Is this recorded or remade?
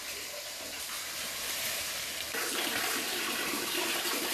remade